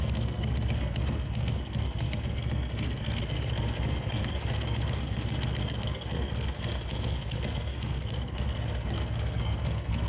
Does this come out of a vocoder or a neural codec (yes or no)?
yes